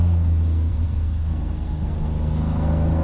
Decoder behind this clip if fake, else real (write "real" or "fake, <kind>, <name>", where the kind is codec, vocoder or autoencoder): fake, codec, SNAC